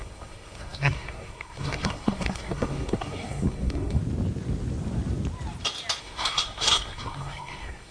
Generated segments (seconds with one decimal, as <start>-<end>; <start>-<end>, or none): 0.0-4.0; 6.0-7.9